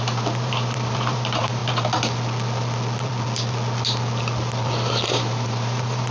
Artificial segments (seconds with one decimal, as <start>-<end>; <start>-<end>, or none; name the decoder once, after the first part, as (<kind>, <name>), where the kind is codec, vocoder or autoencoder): 0.0-1.6 (vocoder, BigVGAN v2); 4.9-6.1